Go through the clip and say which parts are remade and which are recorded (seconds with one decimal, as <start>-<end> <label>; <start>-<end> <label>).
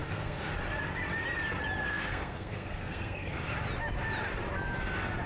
0.0-0.5 remade; 0.5-1.8 recorded; 1.8-3.4 remade; 3.4-5.3 recorded